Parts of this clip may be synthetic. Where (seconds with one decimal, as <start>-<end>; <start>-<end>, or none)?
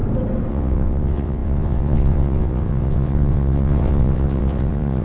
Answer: 0.5-5.0